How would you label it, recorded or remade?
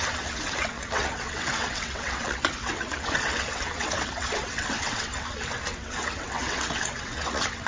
remade